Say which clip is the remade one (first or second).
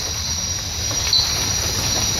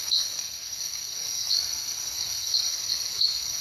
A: second